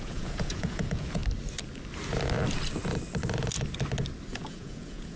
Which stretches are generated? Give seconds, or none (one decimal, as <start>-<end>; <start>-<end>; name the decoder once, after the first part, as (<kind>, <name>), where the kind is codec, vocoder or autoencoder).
0.0-1.2 (vocoder, Vocos); 4.3-5.2